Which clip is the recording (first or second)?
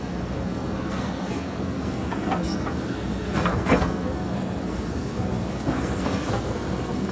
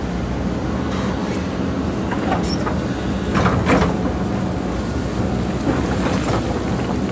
second